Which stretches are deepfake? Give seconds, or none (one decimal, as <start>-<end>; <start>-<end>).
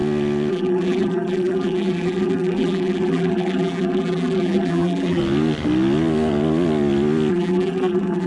0.5-5.2; 7.3-8.3